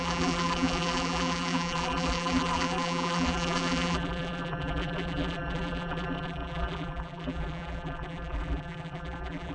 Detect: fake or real fake